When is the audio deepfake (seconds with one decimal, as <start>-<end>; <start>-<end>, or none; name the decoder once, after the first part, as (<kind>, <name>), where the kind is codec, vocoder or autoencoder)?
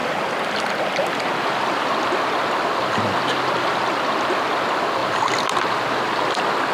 none